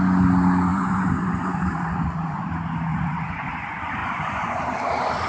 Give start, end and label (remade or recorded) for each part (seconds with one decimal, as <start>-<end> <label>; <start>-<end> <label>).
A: 0.0-0.7 recorded; 0.7-2.4 remade; 2.4-2.9 recorded; 2.9-3.5 remade; 3.5-4.0 recorded; 4.0-4.6 remade; 4.6-5.3 recorded